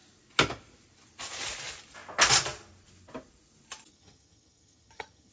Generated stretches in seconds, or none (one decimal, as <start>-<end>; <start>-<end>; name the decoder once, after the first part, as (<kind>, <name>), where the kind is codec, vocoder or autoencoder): 3.9-5.3 (vocoder, HiFi-GAN)